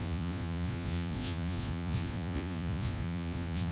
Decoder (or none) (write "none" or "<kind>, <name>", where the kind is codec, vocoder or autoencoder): vocoder, Vocos